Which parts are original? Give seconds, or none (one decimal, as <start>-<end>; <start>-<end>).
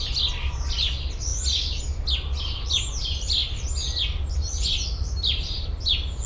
0.0-6.3